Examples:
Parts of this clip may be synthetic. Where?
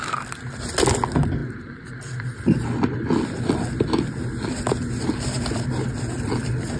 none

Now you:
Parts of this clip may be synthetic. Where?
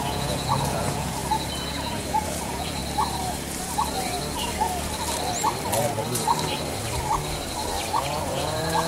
0.0-1.2 (vocoder, Vocos); 1.7-2.8; 7.9-8.9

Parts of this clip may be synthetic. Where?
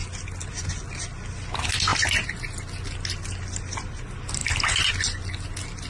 none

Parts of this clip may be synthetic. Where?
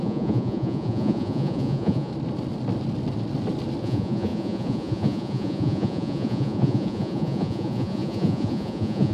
0.0-2.1 (vocoder, Vocos); 3.8-9.1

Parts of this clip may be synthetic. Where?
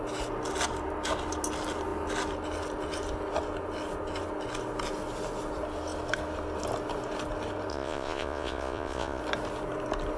7.7-9.2 (vocoder, Vocos)